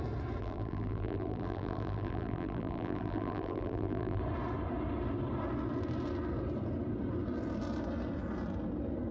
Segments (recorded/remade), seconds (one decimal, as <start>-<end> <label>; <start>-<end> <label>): 0.0-0.4 recorded; 0.4-4.2 remade; 4.2-9.1 recorded